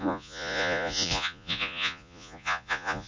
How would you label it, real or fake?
fake